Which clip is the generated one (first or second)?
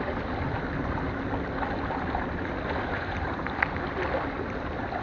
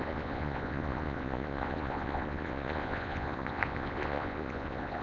second